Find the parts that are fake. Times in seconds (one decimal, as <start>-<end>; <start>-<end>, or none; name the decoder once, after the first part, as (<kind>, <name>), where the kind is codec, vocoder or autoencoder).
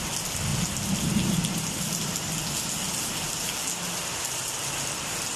none